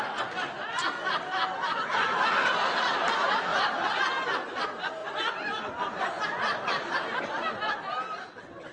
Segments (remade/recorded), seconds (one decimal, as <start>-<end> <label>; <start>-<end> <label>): 0.0-3.5 recorded; 3.5-4.0 remade; 4.0-5.0 recorded; 5.0-7.2 remade; 7.2-8.7 recorded